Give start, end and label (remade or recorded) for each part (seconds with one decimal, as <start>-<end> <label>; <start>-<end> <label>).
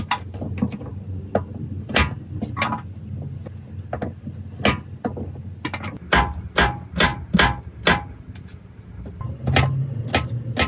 0.0-10.7 recorded